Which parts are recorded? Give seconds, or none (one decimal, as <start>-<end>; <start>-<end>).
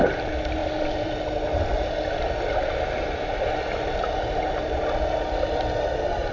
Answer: 0.0-6.3